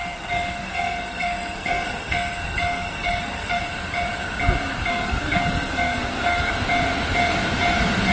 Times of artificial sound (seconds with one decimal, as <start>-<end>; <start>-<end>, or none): 0.0-3.6; 4.9-6.5